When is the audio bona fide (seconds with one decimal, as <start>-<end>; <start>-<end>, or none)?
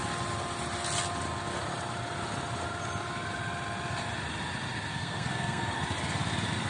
0.0-4.9; 5.7-6.7